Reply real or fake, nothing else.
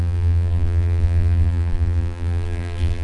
fake